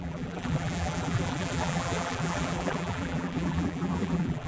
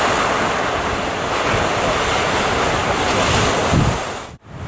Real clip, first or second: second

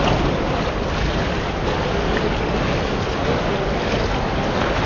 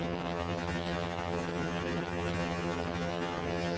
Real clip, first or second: first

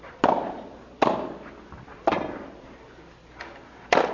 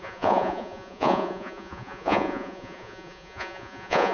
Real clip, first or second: first